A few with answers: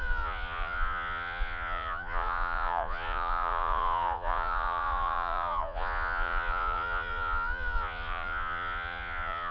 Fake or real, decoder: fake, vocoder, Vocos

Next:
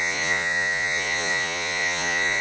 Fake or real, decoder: fake, vocoder, Vocos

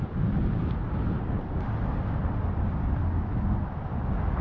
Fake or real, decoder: real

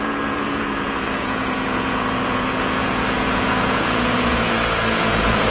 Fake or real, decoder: fake, vocoder, Vocos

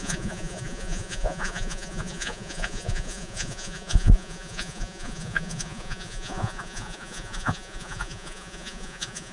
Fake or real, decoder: fake, vocoder, Vocos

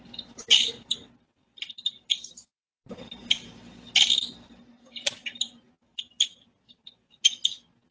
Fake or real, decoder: real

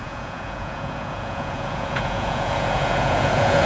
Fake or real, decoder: fake, vocoder, Vocos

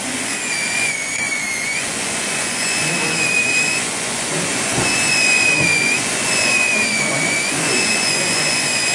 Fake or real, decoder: fake, vocoder, Vocos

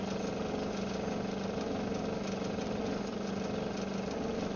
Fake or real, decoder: real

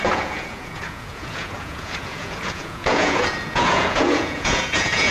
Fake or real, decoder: fake, vocoder, Vocos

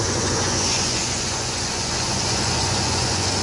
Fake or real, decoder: fake, vocoder, Vocos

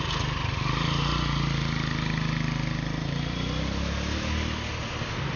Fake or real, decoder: real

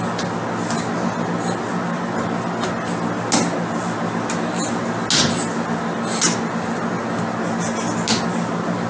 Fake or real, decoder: real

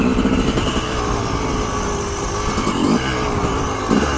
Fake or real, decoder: real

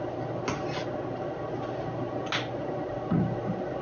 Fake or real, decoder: real